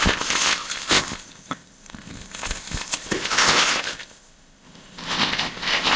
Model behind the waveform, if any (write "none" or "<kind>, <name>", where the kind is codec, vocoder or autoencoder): codec, ZipCodec